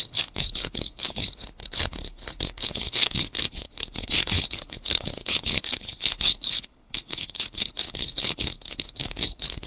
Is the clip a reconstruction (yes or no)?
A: yes